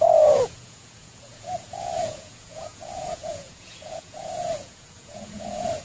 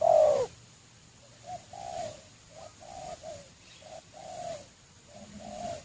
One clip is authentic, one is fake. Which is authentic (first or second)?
second